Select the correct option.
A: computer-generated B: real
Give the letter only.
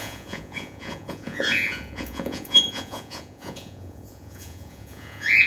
A